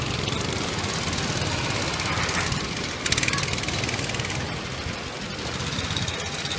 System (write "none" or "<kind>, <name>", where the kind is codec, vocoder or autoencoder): none